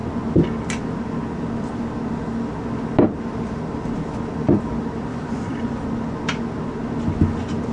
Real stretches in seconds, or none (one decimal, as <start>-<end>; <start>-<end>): 0.0-5.1; 5.9-7.7